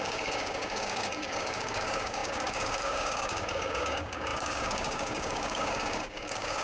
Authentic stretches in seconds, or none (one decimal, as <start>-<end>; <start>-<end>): none